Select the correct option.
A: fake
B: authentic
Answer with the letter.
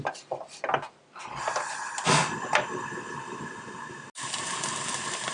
B